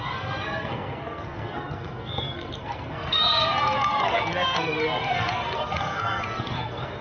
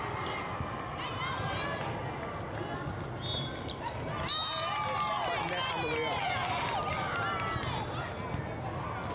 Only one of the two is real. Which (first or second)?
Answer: second